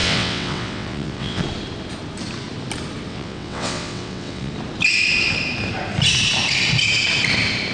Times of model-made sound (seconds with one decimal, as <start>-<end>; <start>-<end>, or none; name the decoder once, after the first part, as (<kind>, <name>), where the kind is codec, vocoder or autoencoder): 0.0-1.4 (vocoder, WaveNeXt); 3.1-4.5